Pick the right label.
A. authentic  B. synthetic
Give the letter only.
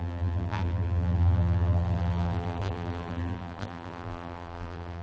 B